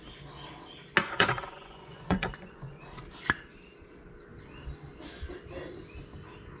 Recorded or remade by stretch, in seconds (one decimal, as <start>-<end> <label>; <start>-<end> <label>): 0.0-1.0 recorded; 1.0-3.0 remade; 3.0-6.6 recorded